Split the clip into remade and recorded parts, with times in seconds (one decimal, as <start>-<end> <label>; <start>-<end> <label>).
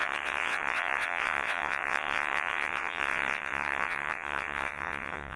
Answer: 0.0-5.4 remade